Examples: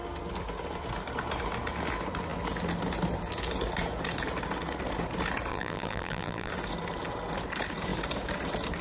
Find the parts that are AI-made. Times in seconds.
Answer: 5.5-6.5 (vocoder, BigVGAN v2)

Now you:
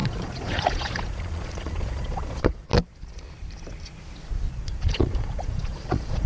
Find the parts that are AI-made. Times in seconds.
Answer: 0.0-2.7 (vocoder, Vocos); 4.5-6.3

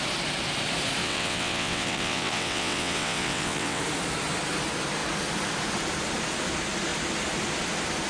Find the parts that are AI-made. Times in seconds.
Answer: 1.0-3.8 (vocoder, WaveNeXt)

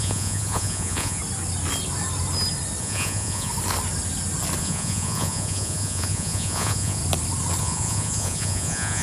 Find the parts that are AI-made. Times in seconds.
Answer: 0.0-1.2 (vocoder, Vocos); 2.8-3.5; 4.6-7.0; 7.6-9.0

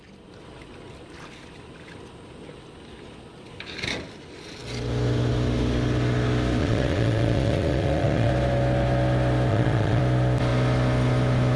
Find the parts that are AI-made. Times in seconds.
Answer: 6.6-8.3 (vocoder, Vocos); 9.5-10.0